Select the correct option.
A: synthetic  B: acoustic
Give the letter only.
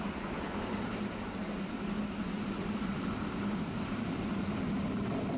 B